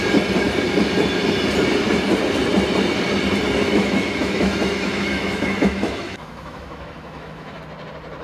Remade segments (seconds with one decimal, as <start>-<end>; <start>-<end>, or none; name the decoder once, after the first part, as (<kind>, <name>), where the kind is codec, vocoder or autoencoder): 3.7-7.6 (autoencoder, DAC-VAE)